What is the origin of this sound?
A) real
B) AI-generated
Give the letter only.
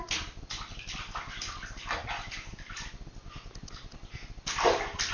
A